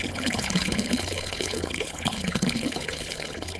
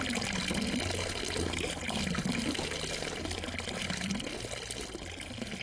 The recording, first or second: second